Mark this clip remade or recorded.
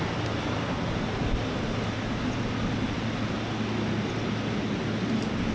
recorded